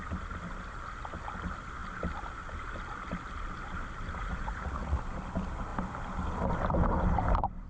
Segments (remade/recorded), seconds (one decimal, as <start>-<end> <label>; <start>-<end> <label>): 0.0-4.2 recorded; 4.2-5.0 remade; 5.0-7.7 recorded